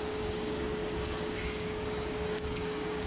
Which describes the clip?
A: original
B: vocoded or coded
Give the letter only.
B